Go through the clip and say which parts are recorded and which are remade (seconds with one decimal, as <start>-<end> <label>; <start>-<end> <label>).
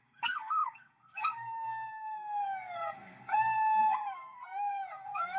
0.0-5.4 remade